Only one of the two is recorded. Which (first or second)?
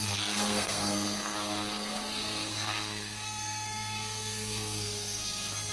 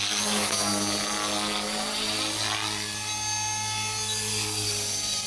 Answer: second